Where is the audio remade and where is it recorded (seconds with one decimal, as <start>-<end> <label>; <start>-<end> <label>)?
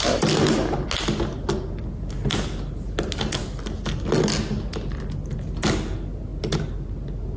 0.0-7.4 recorded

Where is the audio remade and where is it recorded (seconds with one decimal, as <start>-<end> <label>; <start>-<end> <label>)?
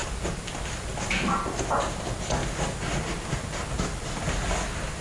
0.0-5.0 recorded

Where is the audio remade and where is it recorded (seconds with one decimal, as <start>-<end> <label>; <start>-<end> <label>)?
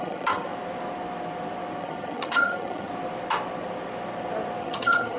0.0-0.5 remade; 0.5-1.8 recorded; 1.8-2.9 remade; 2.9-4.6 recorded; 4.6-5.2 remade